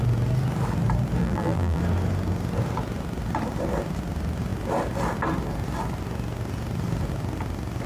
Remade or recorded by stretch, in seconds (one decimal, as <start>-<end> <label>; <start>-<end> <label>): 0.0-1.2 recorded; 1.2-1.8 remade; 1.8-7.9 recorded